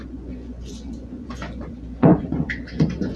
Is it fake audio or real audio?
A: fake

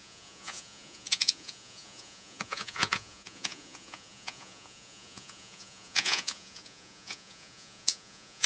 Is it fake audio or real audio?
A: fake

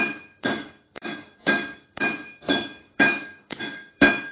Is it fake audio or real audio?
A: fake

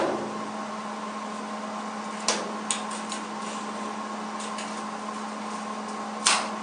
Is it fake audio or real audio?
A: real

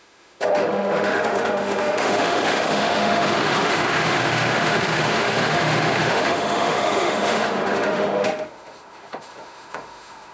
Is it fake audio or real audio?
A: fake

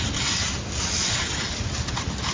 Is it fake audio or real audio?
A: real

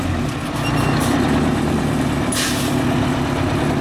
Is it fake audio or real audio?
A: fake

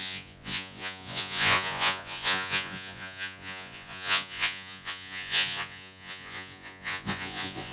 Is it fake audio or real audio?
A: fake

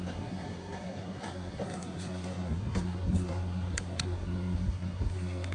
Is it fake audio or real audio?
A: fake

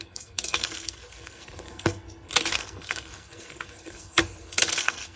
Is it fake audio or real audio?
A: fake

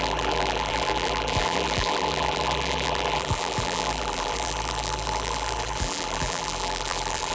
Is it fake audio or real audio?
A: fake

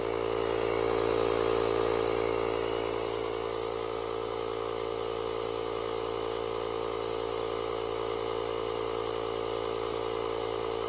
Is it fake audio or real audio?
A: real